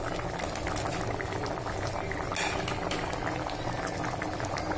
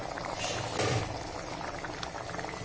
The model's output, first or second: second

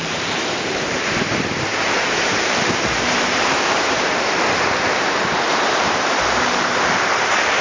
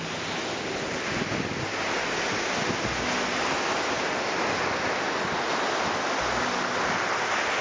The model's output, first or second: first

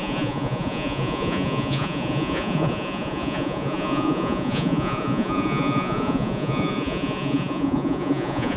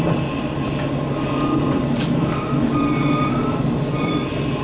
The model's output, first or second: first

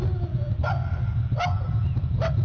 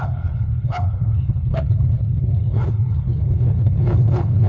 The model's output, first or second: second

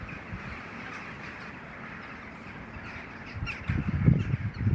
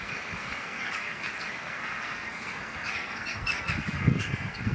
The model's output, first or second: second